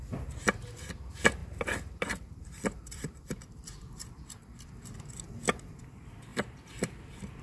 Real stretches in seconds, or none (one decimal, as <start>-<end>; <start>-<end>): 0.0-1.4; 5.8-6.3